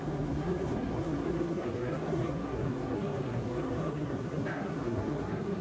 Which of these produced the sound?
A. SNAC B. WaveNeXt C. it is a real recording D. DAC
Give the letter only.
A